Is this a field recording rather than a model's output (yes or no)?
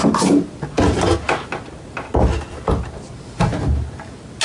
yes